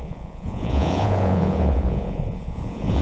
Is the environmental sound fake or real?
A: fake